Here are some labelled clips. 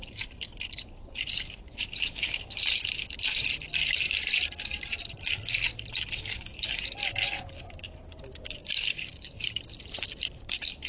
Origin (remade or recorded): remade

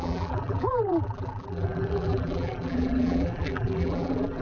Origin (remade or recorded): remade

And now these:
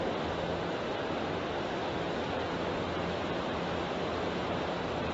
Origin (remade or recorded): remade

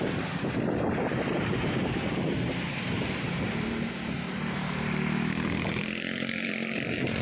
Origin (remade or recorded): remade